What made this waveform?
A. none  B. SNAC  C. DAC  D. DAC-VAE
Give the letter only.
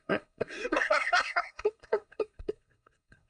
B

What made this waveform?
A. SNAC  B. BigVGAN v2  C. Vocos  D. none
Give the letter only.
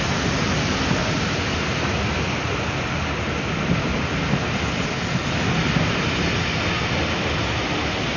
D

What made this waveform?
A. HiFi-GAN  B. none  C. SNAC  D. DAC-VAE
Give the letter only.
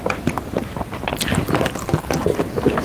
B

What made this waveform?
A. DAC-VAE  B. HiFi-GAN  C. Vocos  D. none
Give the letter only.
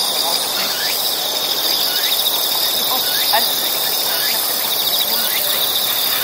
D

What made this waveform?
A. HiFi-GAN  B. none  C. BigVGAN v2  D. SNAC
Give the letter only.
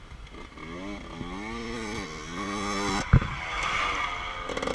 B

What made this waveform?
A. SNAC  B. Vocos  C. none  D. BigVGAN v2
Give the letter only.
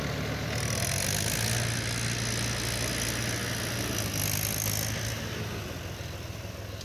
C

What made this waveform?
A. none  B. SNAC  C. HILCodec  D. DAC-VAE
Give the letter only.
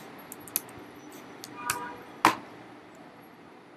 A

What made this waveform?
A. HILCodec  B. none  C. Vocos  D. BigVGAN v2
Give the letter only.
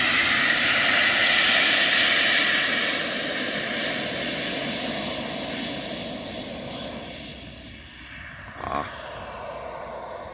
B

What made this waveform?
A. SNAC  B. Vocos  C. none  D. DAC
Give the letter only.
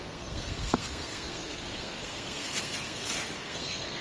A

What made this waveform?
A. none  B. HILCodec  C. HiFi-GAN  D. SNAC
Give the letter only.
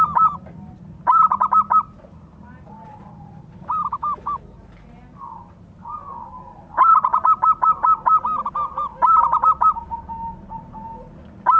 A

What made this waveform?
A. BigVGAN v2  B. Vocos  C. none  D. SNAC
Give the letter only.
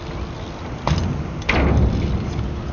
C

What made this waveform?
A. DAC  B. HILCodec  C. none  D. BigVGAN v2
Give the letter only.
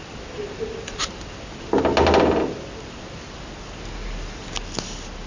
C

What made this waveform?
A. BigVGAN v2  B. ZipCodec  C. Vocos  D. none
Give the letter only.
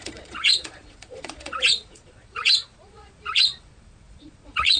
C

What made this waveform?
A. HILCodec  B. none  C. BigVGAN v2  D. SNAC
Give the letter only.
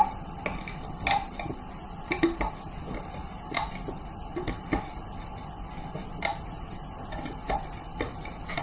B